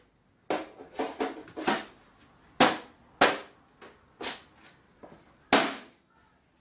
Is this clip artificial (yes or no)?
no